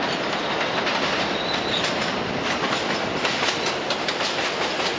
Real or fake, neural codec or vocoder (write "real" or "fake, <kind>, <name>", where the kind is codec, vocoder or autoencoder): real